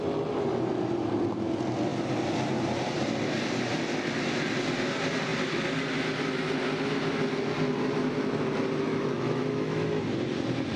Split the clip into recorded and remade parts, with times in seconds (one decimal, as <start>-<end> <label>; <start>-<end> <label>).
0.0-8.9 recorded; 8.9-10.0 remade; 10.0-10.8 recorded